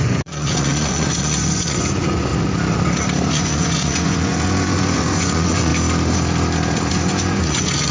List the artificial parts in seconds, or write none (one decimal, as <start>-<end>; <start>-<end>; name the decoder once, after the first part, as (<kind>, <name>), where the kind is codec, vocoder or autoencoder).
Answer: 0.0-2.3 (vocoder, Vocos); 3.3-5.7; 6.9-7.9